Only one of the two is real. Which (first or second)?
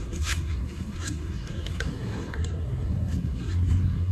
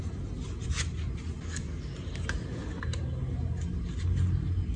second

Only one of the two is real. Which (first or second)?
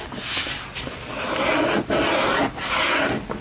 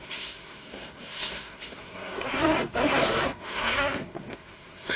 first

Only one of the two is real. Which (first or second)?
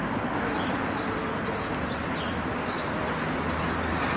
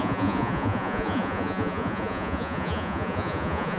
first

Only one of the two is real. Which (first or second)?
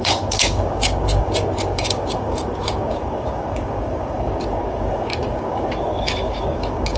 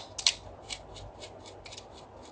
second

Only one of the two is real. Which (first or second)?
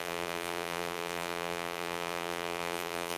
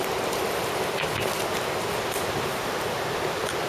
second